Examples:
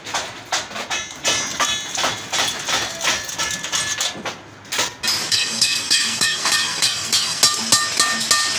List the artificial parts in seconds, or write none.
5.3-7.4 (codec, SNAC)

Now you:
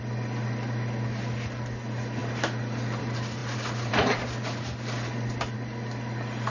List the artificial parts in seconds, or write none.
none

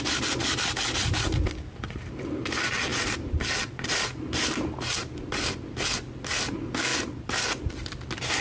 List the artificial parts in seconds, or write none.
none